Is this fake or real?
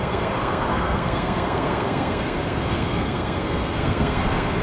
fake